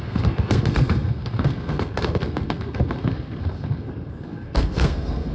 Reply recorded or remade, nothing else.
remade